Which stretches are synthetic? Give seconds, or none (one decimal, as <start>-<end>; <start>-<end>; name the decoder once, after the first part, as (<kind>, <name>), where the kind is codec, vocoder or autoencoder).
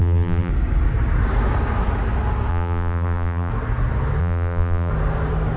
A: 0.0-0.5 (vocoder, BigVGAN v2); 2.5-3.5; 4.2-4.9